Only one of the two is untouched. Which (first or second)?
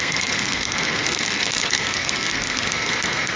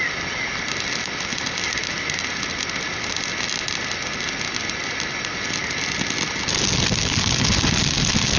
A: second